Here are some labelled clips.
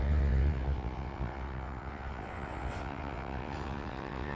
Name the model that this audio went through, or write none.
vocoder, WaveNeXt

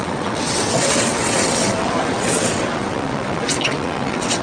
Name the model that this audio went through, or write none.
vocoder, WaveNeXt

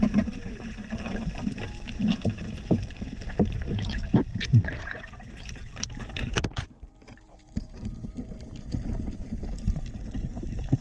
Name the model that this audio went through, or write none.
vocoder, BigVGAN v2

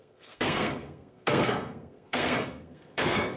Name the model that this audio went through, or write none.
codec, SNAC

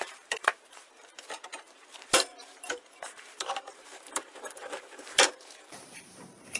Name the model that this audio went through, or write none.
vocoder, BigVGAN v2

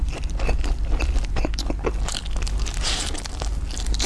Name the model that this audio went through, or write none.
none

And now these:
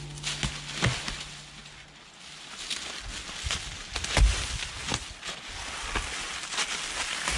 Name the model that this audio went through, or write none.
none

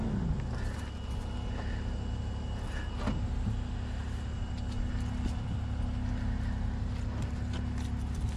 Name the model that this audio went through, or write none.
none